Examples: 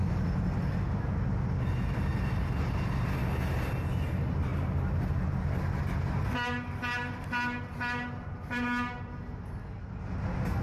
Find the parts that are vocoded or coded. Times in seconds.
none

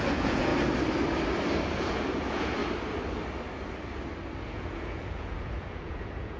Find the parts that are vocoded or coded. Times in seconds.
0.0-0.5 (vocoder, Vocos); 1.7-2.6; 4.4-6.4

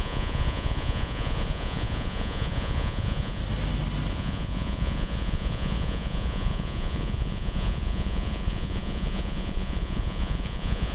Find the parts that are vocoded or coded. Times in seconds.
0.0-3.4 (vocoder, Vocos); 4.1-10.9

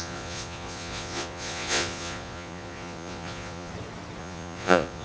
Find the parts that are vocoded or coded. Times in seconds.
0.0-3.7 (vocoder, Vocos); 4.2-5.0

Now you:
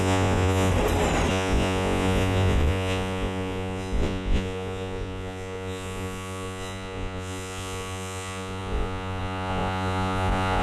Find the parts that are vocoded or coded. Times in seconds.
0.0-0.7 (vocoder, Vocos); 1.3-10.6